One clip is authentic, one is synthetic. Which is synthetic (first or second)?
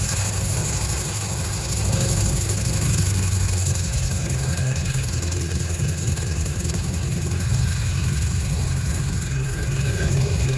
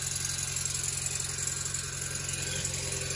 first